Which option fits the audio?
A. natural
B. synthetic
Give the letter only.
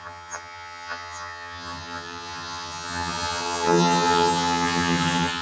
B